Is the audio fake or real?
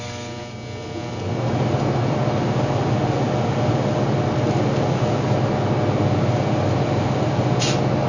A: real